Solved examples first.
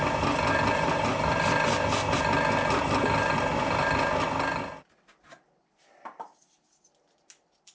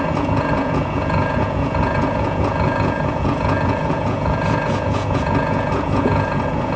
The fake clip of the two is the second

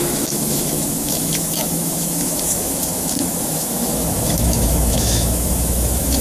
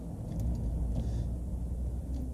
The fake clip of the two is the first